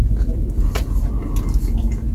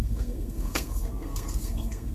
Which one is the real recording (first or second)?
first